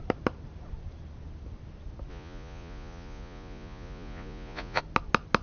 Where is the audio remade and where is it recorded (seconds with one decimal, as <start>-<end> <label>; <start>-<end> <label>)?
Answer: 0.0-2.1 recorded; 2.1-4.8 remade; 4.8-5.4 recorded